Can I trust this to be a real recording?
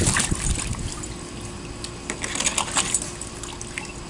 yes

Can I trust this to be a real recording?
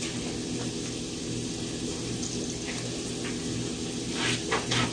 yes